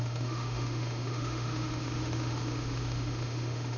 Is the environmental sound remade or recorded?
remade